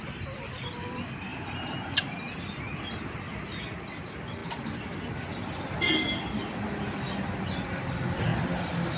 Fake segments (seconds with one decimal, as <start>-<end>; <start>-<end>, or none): none